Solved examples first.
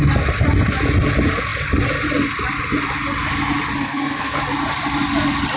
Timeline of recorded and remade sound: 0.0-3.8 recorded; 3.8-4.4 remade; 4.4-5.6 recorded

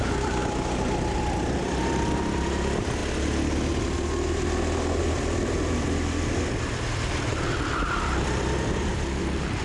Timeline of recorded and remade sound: 0.0-0.4 remade; 0.4-1.2 recorded; 1.2-3.0 remade; 3.0-5.0 recorded; 5.0-9.6 remade

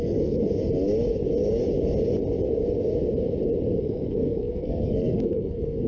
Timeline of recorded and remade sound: 0.0-0.4 remade; 0.4-3.8 recorded; 3.8-5.9 remade

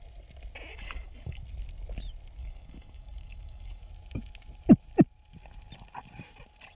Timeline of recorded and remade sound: 0.0-0.7 recorded; 0.7-1.4 remade; 1.4-2.4 recorded; 2.4-3.9 remade; 3.9-6.7 recorded

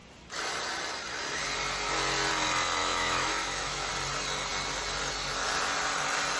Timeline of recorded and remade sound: 0.0-2.8 recorded; 2.8-3.9 remade; 3.9-6.4 recorded

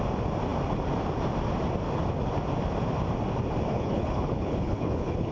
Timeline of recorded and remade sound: 0.0-3.7 recorded; 3.7-5.3 remade

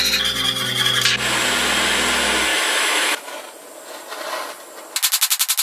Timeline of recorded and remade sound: 0.0-2.5 recorded; 2.5-3.3 remade; 3.3-5.6 recorded